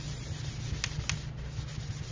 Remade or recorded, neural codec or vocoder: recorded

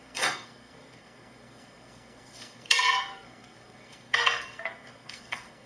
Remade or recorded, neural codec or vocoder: remade, codec, SNAC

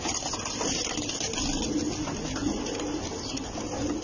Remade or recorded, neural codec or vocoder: recorded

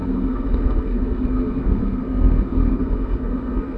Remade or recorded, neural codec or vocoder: remade, codec, SNAC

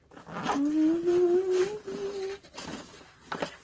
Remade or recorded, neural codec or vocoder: recorded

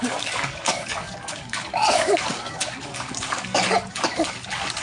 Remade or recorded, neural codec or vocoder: remade, codec, DAC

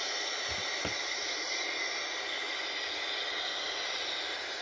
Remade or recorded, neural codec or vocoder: recorded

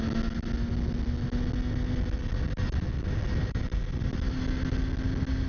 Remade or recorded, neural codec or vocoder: recorded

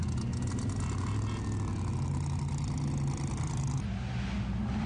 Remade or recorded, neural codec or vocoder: recorded